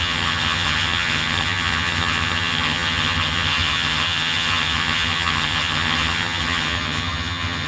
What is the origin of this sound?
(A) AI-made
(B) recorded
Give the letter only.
A